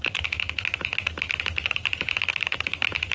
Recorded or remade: remade